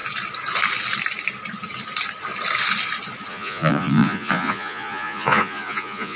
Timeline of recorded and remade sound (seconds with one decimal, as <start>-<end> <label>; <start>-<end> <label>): 0.0-3.3 recorded; 3.3-6.2 remade